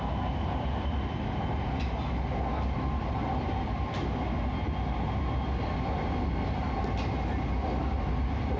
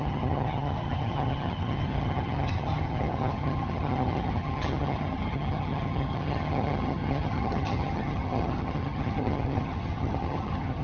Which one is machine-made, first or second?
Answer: second